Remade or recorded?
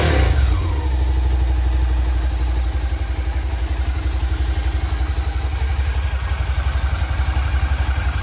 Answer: recorded